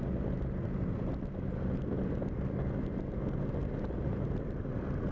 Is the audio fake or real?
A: real